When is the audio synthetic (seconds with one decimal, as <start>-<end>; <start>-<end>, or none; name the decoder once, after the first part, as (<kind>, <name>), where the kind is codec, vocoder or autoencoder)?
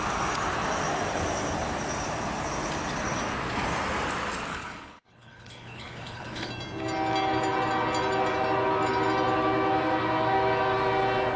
4.5-6.5 (codec, HILCodec)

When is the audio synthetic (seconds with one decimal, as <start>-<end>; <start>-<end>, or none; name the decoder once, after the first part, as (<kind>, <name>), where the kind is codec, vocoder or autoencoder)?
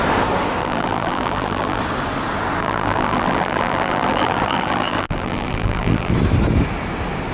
0.6-1.8 (vocoder, BigVGAN v2); 2.6-6.1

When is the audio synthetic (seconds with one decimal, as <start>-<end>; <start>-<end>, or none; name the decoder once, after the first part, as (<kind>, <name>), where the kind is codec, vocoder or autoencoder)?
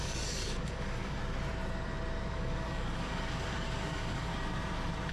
0.0-1.2 (codec, DAC); 2.3-4.3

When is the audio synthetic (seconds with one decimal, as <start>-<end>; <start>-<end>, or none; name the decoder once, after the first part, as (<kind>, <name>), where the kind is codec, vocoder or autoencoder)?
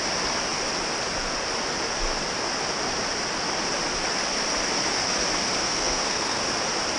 5.6-6.4 (codec, SNAC)